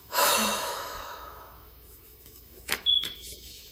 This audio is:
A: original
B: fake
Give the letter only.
B